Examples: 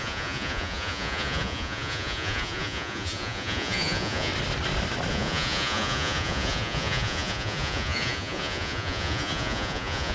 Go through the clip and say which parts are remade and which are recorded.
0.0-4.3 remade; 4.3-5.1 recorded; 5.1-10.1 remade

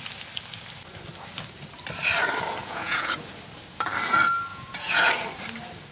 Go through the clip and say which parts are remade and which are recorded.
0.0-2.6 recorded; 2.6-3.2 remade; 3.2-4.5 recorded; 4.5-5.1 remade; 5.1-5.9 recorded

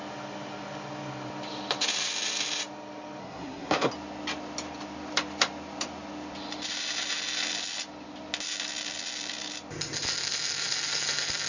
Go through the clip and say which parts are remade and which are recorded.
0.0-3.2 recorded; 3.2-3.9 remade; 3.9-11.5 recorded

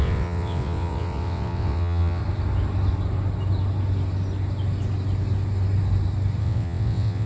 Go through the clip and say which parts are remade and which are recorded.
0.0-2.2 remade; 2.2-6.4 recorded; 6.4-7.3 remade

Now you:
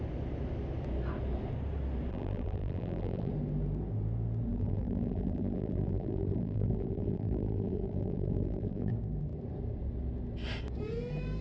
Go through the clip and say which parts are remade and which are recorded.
0.0-2.1 recorded; 2.1-3.3 remade; 3.3-4.5 recorded; 4.5-8.9 remade; 8.9-11.4 recorded

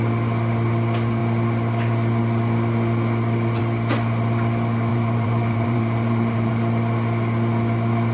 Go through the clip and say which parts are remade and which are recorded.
0.0-4.9 recorded; 4.9-6.5 remade; 6.5-8.1 recorded

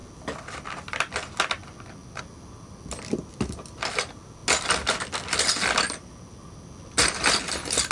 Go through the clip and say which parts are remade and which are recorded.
0.0-7.9 recorded